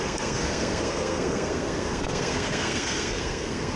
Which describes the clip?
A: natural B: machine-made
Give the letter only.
B